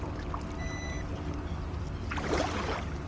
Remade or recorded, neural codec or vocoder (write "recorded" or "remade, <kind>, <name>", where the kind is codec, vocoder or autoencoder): recorded